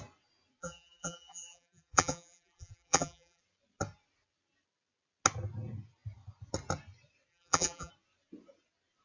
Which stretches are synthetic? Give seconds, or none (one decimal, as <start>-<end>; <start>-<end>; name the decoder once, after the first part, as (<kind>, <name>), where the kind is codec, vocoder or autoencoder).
0.6-3.4 (vocoder, BigVGAN v2); 7.3-7.9